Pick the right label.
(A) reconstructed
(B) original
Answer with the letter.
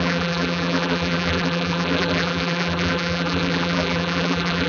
A